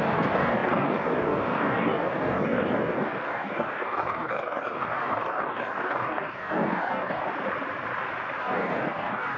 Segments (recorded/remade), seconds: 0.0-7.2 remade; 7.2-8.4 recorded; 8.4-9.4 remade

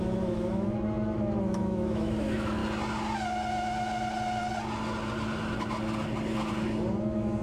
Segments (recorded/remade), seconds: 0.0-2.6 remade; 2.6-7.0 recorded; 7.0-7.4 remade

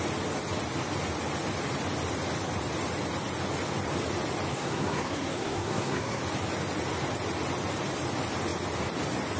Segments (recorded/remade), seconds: 0.0-4.5 recorded; 4.5-6.2 remade; 6.2-9.4 recorded